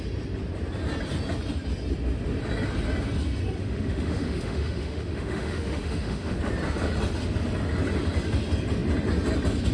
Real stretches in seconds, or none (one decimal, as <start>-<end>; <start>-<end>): 0.0-3.6; 6.4-9.7